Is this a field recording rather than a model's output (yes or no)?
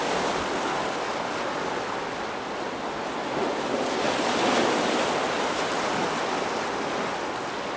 yes